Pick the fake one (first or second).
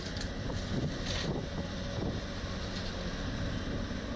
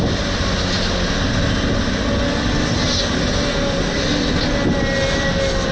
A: first